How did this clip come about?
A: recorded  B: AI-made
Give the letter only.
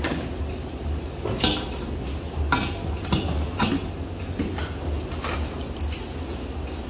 A